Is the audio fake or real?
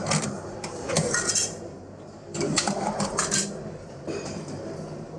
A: fake